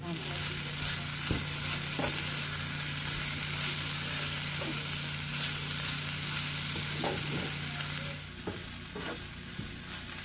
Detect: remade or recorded recorded